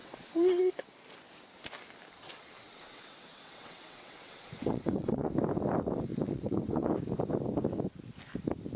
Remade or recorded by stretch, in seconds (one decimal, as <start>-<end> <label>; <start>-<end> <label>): 0.0-0.6 remade; 0.6-2.2 recorded; 2.2-5.3 remade; 5.3-6.1 recorded; 6.1-6.9 remade; 6.9-8.8 recorded